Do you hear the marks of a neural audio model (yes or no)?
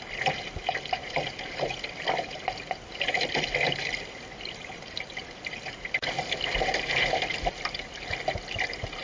no